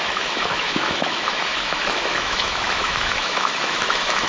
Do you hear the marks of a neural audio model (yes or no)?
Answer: yes